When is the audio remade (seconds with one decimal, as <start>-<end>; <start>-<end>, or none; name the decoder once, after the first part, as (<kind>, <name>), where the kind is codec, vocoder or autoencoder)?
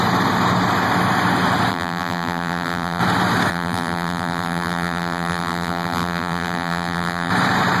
1.7-3.0 (vocoder, BigVGAN v2); 3.5-7.3